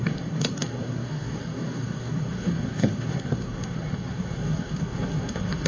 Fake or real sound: fake